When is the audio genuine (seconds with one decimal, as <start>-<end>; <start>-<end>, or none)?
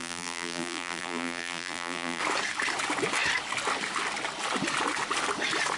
2.2-5.8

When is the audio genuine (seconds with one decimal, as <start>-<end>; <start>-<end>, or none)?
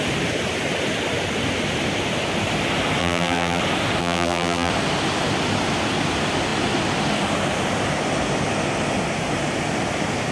0.0-3.0; 3.6-4.0; 4.7-10.3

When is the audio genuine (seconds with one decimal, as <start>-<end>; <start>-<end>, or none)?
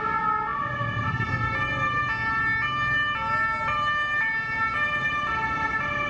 0.0-0.5; 1.3-6.1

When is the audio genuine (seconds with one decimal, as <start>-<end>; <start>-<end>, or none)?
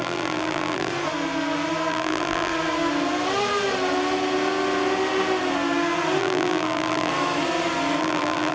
0.9-1.9; 2.5-6.2; 7.1-8.0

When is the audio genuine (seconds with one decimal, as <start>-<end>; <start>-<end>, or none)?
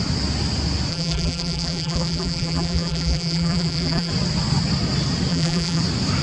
0.0-0.9; 4.1-5.3; 5.8-6.2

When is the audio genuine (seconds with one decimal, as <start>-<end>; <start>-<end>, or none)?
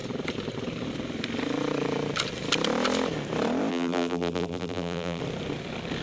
0.0-3.7; 5.2-6.0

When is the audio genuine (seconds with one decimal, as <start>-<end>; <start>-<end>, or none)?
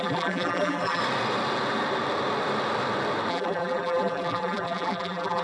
1.0-3.3